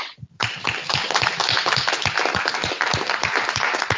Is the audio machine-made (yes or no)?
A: no